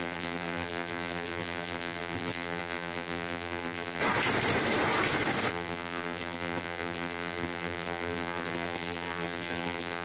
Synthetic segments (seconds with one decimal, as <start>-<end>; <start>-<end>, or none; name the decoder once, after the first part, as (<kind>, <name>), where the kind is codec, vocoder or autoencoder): 0.0-4.0 (vocoder, BigVGAN v2); 5.5-10.0